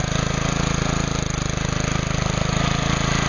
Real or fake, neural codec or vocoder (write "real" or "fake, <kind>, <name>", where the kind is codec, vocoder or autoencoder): real